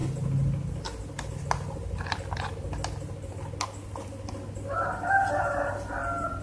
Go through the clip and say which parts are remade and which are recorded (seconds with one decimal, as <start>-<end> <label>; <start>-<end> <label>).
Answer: 0.0-6.4 recorded